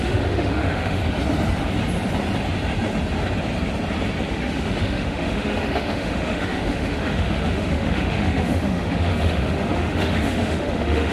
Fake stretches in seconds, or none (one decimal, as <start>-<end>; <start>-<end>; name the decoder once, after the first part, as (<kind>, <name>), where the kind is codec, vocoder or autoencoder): 0.0-1.0 (autoencoder, DAC-VAE); 4.3-11.1